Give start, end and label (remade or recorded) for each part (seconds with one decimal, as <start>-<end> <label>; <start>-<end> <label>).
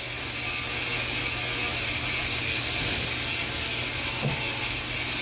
0.0-5.2 recorded